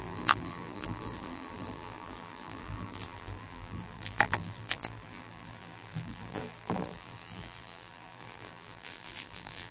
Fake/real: fake